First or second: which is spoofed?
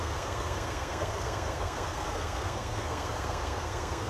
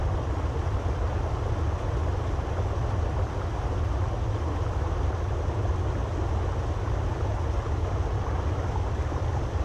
first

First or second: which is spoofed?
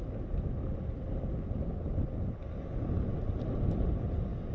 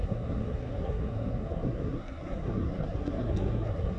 second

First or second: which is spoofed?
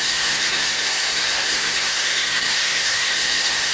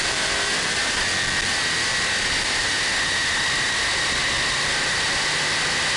first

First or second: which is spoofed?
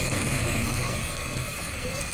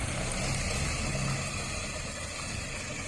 first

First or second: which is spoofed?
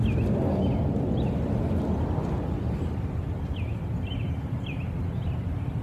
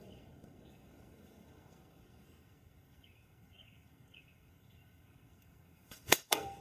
second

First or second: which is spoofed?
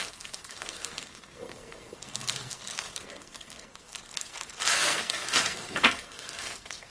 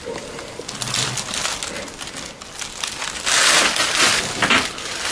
first